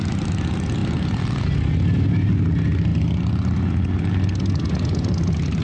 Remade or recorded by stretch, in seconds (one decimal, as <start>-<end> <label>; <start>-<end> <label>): 0.0-5.6 recorded